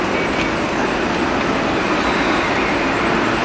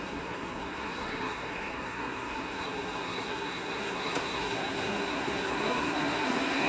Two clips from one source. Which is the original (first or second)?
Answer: first